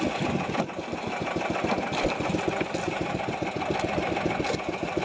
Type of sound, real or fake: real